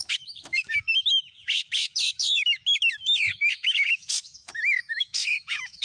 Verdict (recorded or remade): remade